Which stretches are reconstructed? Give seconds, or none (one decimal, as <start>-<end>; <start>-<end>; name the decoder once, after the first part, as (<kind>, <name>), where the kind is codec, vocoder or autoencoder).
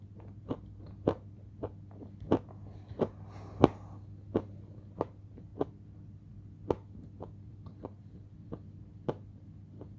5.5-6.3 (vocoder, BigVGAN v2)